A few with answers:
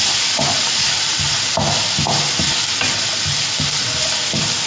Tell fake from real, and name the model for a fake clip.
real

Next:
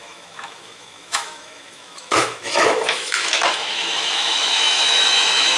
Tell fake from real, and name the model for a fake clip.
fake, autoencoder, DAC-VAE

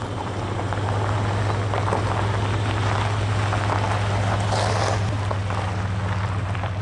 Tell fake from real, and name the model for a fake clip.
real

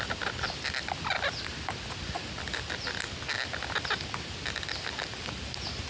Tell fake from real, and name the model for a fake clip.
real